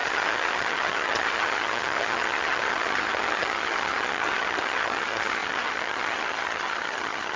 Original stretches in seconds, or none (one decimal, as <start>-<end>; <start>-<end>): none